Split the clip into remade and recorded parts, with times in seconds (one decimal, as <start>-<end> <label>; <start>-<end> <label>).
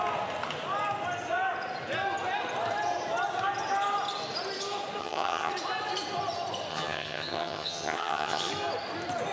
0.0-5.0 recorded; 5.0-5.5 remade; 5.5-6.7 recorded; 6.7-8.5 remade; 8.5-9.3 recorded